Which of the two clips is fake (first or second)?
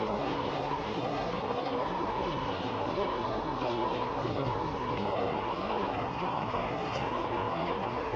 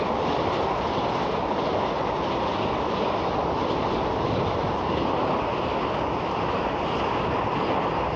first